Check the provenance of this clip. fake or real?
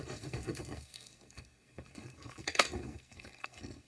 fake